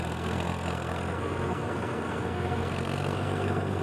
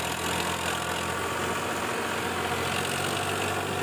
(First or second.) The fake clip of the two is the first